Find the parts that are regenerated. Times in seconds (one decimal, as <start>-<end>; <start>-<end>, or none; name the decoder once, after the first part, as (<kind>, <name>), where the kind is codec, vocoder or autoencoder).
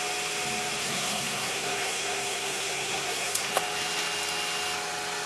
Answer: 0.8-3.5 (codec, SNAC)